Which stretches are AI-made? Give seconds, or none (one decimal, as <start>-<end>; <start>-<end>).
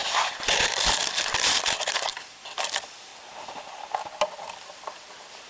0.0-3.1; 4.3-5.5